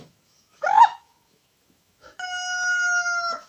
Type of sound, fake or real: fake